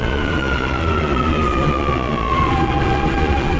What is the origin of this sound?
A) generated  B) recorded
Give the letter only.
A